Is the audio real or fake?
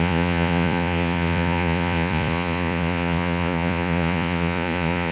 fake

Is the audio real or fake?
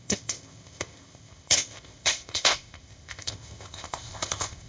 fake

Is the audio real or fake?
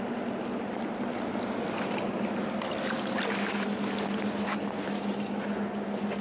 real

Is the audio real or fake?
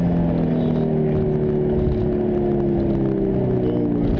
real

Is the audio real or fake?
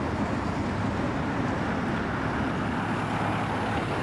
real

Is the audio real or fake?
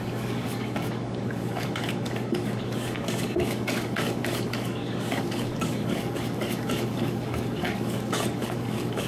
fake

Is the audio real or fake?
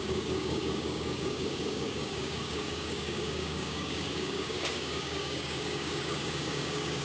fake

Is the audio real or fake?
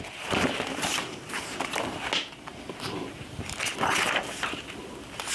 real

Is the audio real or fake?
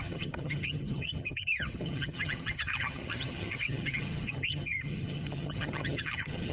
fake